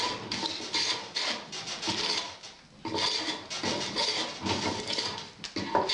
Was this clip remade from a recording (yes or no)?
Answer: no